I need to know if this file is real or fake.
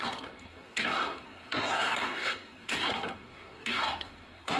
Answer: fake